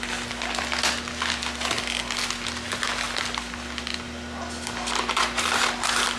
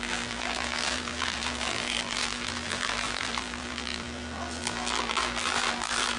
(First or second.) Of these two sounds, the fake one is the second